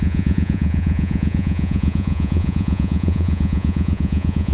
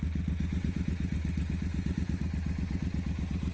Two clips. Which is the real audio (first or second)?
second